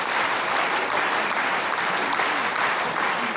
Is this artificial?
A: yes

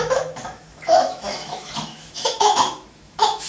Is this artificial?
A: yes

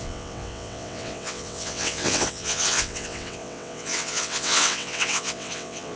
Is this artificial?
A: yes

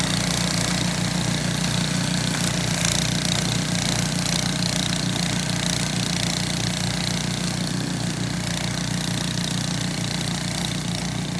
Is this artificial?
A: no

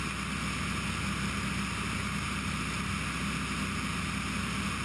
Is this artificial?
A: no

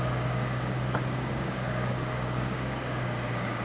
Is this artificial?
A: yes